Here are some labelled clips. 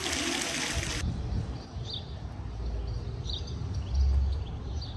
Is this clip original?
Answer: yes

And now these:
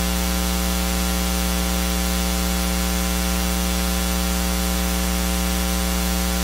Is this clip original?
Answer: yes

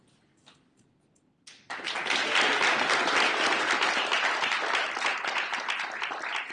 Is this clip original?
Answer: yes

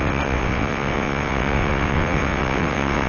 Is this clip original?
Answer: no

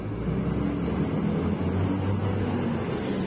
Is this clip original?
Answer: yes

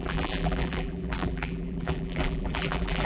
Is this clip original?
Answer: no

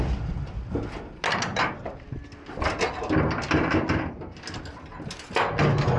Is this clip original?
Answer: yes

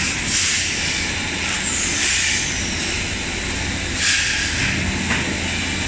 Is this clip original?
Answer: yes